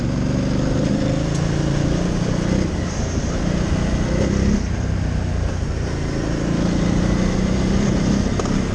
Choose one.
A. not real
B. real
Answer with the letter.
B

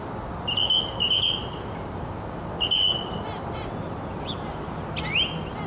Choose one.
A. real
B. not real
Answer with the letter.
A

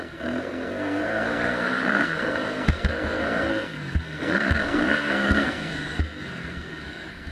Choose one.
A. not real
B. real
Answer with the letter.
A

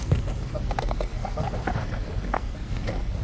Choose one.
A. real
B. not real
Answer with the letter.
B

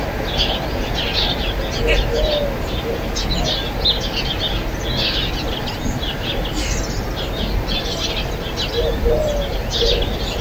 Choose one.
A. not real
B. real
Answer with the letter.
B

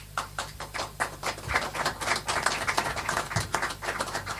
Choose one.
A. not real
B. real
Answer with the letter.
B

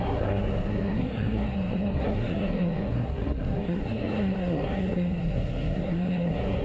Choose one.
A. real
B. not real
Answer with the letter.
B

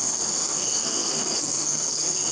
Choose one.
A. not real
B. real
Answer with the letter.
A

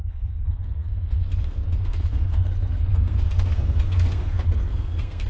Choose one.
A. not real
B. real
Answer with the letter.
A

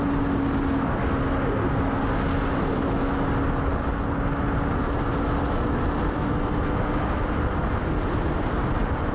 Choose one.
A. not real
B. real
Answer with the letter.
B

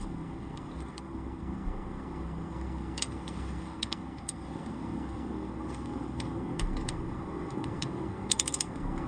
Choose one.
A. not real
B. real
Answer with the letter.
A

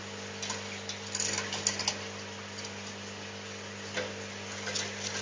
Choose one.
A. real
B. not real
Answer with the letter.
A